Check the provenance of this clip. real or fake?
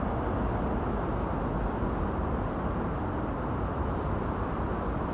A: real